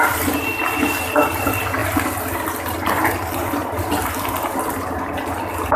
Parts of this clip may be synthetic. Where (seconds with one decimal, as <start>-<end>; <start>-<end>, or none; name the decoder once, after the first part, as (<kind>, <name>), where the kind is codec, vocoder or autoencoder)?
none